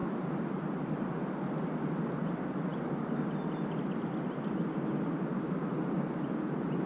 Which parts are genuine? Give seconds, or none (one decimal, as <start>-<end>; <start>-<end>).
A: 0.0-6.9